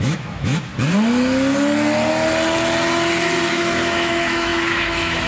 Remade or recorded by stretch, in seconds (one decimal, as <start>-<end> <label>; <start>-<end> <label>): 0.0-0.7 remade; 0.7-3.5 recorded; 3.5-5.3 remade